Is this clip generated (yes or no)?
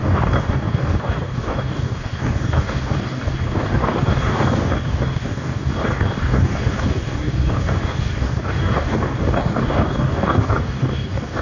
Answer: yes